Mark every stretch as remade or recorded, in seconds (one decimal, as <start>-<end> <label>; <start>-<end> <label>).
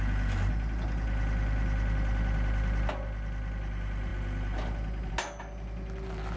0.0-6.4 recorded